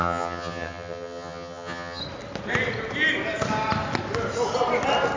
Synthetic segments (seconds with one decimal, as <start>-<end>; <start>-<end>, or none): 0.0-2.0